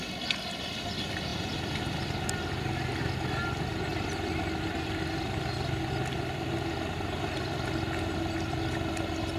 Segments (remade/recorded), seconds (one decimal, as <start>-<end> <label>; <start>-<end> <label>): 0.0-9.4 recorded